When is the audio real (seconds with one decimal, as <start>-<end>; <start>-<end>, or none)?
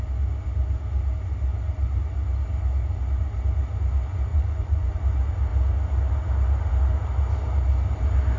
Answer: 0.0-4.3; 5.0-8.4